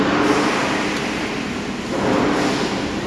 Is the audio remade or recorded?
recorded